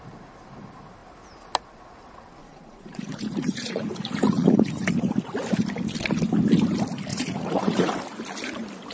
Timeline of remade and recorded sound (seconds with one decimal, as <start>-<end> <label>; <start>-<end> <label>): 0.0-2.4 recorded; 2.4-4.9 remade; 4.9-7.1 recorded; 7.1-7.9 remade; 7.9-8.9 recorded